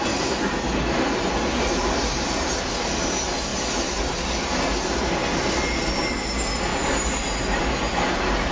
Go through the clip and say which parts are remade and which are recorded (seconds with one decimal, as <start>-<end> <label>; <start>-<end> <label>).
0.0-8.5 recorded